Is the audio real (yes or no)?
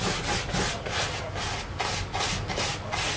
yes